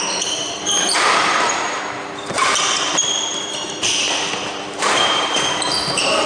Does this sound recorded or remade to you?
remade